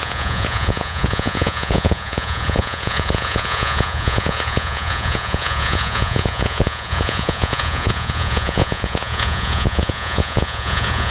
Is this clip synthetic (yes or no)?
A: yes